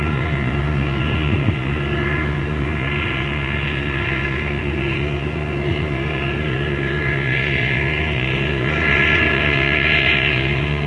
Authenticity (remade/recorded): remade